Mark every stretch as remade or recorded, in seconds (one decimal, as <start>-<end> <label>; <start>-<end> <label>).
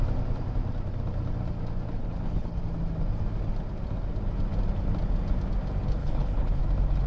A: 0.0-2.0 recorded; 2.0-2.6 remade; 2.6-6.0 recorded; 6.0-6.6 remade; 6.6-7.1 recorded